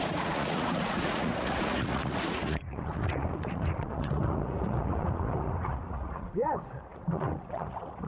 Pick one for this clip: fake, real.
fake